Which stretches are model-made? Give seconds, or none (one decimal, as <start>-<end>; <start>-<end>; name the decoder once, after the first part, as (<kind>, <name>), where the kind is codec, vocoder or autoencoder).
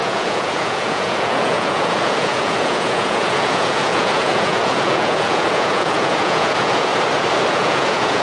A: 0.0-6.9 (vocoder, Vocos); 7.5-8.2